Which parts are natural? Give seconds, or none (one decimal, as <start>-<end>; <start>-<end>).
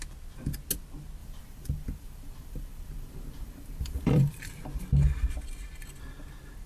0.0-1.2; 4.3-6.7